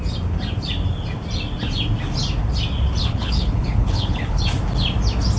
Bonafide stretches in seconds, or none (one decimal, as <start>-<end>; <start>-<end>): 0.0-3.0; 4.4-5.4